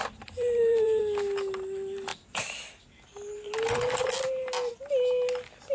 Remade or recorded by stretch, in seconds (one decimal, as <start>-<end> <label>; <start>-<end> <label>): 0.0-1.0 remade; 1.0-2.1 recorded; 2.1-4.7 remade; 4.7-5.7 recorded